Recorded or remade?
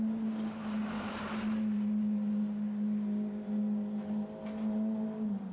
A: recorded